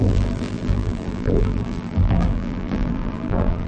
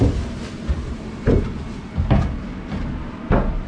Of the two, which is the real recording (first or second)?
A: second